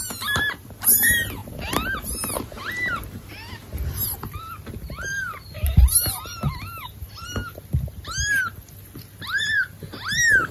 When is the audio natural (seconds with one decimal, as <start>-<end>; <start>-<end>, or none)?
0.0-10.5